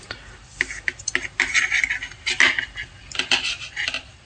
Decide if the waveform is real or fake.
real